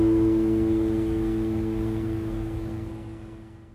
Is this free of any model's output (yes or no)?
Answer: no